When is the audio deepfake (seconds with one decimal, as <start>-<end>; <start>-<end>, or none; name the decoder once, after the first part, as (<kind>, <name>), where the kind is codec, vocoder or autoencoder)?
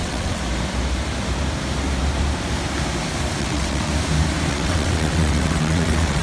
0.0-0.4 (vocoder, WaveNeXt); 3.4-3.9; 4.5-6.2